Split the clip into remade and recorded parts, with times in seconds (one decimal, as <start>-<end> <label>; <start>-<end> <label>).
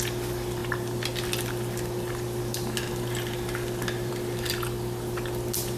0.0-5.8 recorded